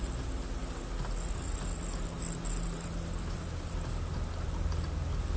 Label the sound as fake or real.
real